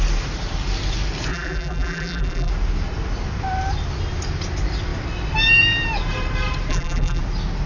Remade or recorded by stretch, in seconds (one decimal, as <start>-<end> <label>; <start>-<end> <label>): 0.0-1.3 recorded; 1.3-2.5 remade; 2.5-6.7 recorded; 6.7-7.2 remade; 7.2-7.7 recorded